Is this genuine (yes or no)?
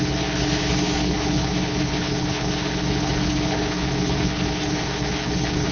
no